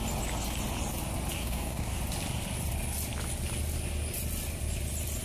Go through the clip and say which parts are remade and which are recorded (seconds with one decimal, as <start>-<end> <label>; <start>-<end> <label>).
0.0-1.4 recorded; 1.4-2.0 remade; 2.0-5.2 recorded